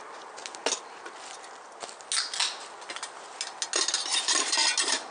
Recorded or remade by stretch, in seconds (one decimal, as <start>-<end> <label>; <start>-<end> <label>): 0.0-5.1 recorded